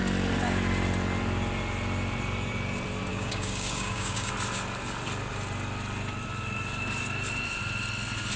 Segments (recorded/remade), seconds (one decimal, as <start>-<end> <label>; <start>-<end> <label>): 0.0-3.1 recorded; 3.1-4.3 remade; 4.3-8.4 recorded